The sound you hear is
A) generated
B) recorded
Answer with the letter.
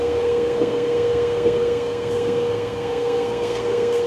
A